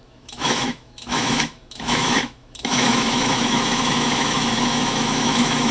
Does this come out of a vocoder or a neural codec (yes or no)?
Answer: yes